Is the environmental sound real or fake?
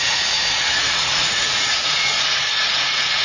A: fake